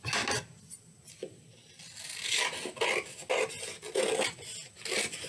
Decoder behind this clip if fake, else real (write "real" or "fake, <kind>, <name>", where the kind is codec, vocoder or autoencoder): real